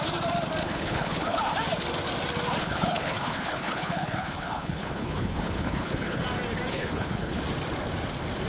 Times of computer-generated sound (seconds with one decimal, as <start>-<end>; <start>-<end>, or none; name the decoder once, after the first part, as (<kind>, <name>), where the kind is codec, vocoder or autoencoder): 0.6-1.4 (codec, HILCodec); 2.6-6.2; 6.7-7.4